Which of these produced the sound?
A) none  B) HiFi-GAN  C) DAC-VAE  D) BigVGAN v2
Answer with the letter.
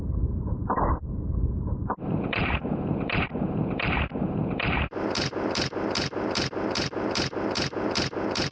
D